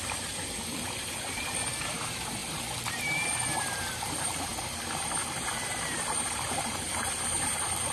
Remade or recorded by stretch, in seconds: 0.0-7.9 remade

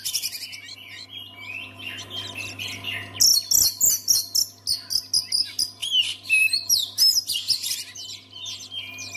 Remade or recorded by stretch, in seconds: 0.0-9.2 recorded

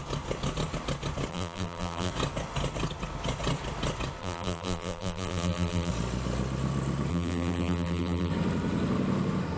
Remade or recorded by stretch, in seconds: 0.0-1.3 recorded; 1.3-2.1 remade; 2.1-4.2 recorded; 4.2-5.9 remade; 5.9-7.1 recorded; 7.1-8.3 remade; 8.3-9.6 recorded